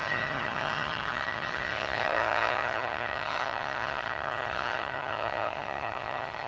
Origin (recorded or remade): remade